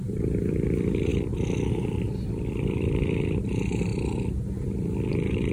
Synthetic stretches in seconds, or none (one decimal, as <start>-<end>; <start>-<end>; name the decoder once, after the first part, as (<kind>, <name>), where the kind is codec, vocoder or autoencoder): 0.0-1.1 (vocoder, BigVGAN v2); 1.7-3.9; 5.1-5.5